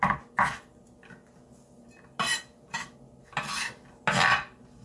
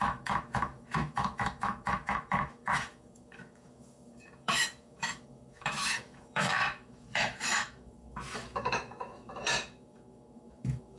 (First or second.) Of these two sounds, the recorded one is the first